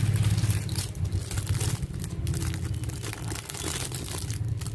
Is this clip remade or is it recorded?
recorded